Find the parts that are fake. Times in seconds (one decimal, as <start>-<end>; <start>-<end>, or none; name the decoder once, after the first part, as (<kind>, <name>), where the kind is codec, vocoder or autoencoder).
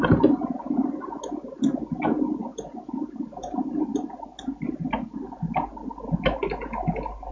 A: none